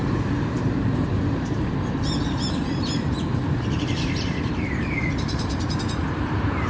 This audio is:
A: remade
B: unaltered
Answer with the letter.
A